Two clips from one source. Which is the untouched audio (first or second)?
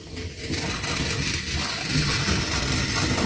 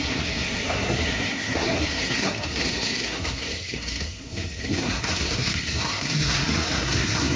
first